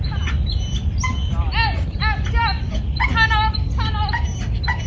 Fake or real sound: real